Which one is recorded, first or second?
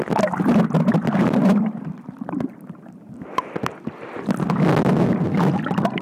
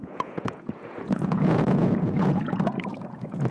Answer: first